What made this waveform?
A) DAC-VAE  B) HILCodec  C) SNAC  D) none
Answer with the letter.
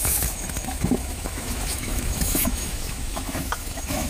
A